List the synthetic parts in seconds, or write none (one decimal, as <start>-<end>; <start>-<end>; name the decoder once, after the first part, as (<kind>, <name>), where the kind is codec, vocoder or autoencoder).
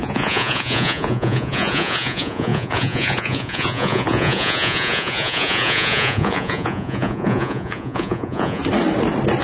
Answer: 0.0-8.6 (vocoder, Vocos)